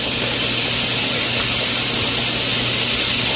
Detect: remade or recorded recorded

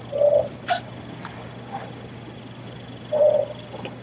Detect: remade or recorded recorded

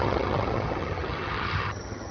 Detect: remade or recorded remade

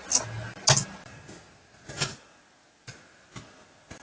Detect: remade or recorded recorded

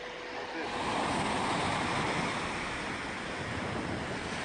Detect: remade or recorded recorded